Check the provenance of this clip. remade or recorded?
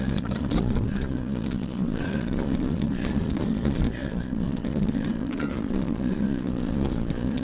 remade